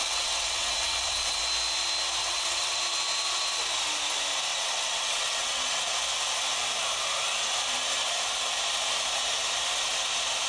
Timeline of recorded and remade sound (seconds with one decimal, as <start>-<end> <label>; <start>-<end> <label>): 0.0-1.4 remade; 1.4-2.2 recorded; 2.2-2.8 remade; 2.8-4.5 recorded; 4.5-5.8 remade; 5.8-10.5 recorded